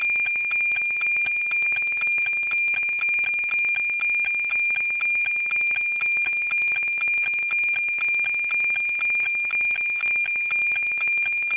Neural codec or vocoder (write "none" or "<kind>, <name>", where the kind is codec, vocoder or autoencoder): none